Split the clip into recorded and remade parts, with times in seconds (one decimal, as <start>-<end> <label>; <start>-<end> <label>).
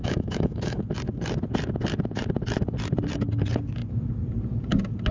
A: 0.0-0.8 remade; 0.8-5.1 recorded